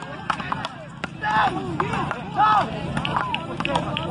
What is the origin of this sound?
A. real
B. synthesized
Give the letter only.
A